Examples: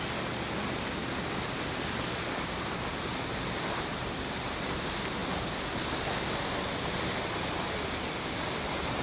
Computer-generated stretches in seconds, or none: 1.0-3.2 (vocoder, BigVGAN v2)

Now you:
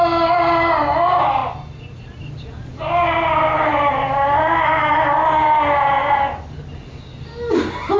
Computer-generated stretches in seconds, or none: 1.4-2.2 (vocoder, BigVGAN v2)

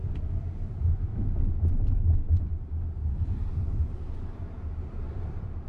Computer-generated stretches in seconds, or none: 0.0-5.7 (vocoder, BigVGAN v2)

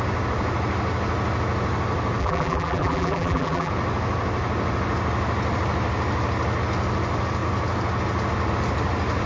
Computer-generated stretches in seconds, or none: 2.2-3.7 (vocoder, BigVGAN v2)